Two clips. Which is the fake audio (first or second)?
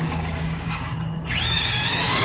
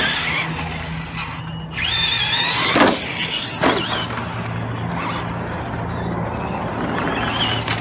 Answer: first